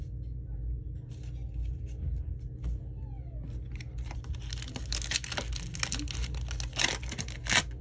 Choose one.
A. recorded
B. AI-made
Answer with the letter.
A